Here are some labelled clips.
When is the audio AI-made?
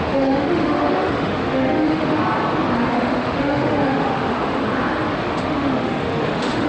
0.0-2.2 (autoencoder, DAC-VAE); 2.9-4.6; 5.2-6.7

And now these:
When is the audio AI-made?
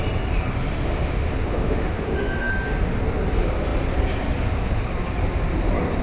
0.9-2.5 (autoencoder, DAC-VAE)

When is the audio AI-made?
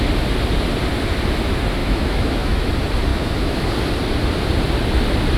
1.8-2.7 (autoencoder, DAC-VAE); 3.1-3.7